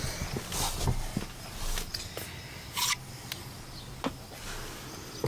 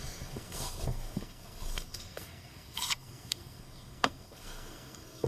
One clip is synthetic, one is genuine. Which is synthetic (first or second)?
second